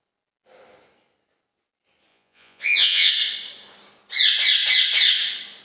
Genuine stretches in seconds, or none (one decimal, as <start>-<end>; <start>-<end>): 0.0-2.1; 3.1-5.6